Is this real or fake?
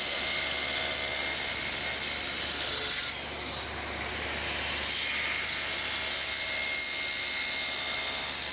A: real